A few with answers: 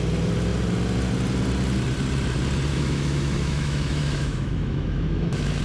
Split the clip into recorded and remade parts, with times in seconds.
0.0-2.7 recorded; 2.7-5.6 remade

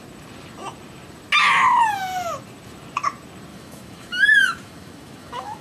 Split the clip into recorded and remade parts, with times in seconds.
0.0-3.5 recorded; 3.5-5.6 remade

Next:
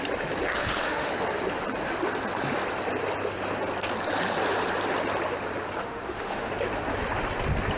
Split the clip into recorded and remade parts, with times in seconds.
0.0-0.6 recorded; 0.6-1.1 remade; 1.1-5.8 recorded; 5.8-6.5 remade; 6.5-7.8 recorded